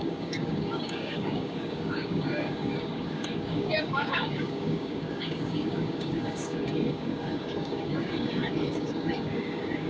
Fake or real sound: fake